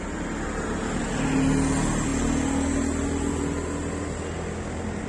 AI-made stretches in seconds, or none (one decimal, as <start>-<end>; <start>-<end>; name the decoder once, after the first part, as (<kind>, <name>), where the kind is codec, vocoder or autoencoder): none